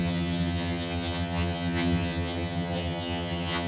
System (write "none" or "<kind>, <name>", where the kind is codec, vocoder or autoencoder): vocoder, HiFi-GAN